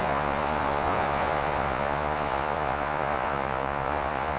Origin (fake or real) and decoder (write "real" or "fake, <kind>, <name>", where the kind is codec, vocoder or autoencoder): fake, vocoder, Vocos